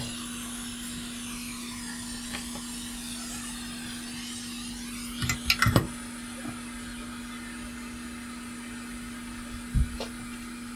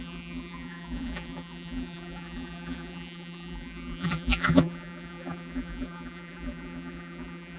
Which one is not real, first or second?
second